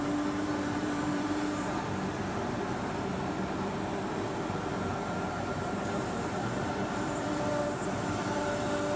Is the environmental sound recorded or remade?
remade